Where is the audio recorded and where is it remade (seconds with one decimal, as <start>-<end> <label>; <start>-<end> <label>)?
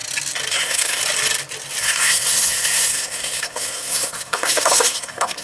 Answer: 0.0-0.5 recorded; 0.5-1.0 remade; 1.0-1.8 recorded; 1.8-5.4 remade